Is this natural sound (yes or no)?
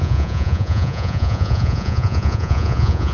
no